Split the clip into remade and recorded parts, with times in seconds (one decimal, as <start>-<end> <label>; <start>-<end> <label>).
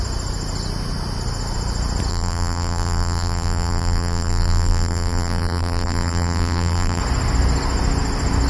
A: 0.0-2.1 recorded; 2.1-7.0 remade; 7.0-8.5 recorded